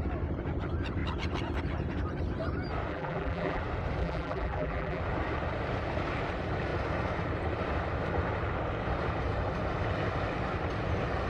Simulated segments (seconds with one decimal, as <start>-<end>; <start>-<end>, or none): 2.9-3.6; 4.0-5.0

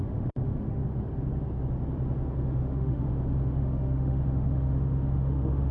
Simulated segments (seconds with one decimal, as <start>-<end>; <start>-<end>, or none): 0.0-0.8; 2.6-3.1; 3.6-5.7

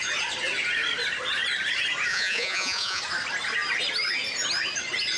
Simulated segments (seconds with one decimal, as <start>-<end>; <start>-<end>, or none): 2.1-3.0

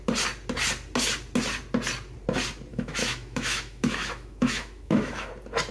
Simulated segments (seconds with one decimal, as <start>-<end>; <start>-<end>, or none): 2.7-5.3

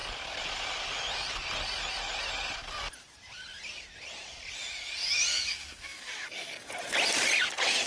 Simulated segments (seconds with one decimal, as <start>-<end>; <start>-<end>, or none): 5.3-6.7

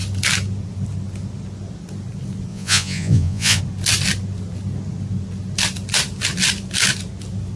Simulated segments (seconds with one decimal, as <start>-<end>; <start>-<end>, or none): 2.5-3.6